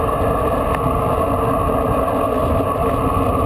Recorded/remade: recorded